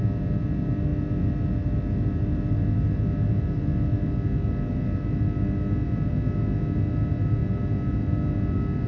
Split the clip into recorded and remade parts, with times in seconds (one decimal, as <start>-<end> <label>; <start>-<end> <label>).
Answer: 0.0-8.9 recorded